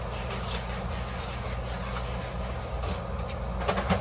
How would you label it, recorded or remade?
recorded